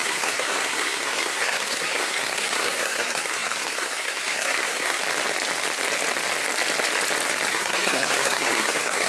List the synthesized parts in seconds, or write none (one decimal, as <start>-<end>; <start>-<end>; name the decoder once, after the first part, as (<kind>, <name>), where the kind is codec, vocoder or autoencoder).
0.0-5.0 (codec, SNAC); 7.5-9.1